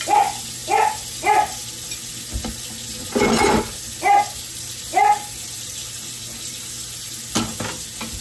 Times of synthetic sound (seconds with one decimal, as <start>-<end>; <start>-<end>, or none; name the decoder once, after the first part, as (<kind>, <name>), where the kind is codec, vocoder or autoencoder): none